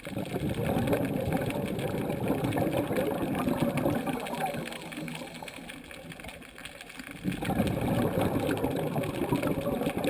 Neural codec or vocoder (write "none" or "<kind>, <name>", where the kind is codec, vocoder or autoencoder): none